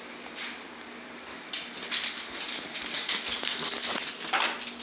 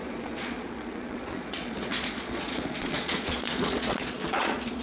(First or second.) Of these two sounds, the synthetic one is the second